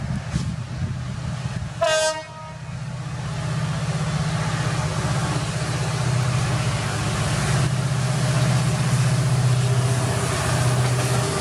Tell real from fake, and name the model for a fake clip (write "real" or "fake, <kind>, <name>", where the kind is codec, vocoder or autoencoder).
real